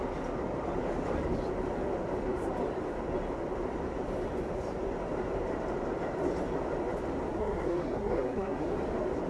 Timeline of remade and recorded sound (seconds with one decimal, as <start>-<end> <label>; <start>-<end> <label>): 0.0-7.3 recorded; 7.3-8.7 remade; 8.7-9.3 recorded